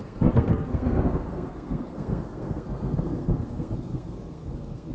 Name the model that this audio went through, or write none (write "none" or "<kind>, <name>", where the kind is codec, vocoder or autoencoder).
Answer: codec, SNAC